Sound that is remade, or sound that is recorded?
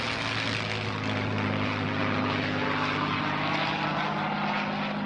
recorded